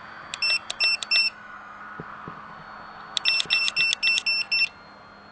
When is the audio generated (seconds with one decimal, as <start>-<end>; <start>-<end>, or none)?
1.2-1.8